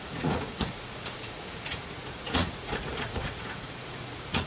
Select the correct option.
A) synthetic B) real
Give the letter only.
A